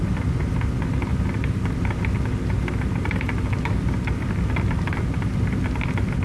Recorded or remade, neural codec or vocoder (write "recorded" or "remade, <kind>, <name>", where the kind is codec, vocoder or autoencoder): recorded